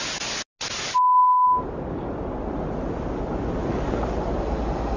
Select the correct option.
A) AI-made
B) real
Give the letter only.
B